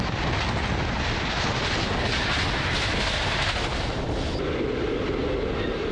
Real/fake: real